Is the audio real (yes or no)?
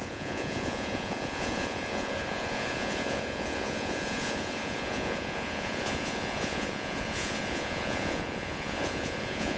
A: no